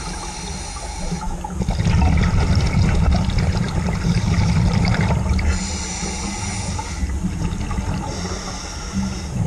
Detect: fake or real real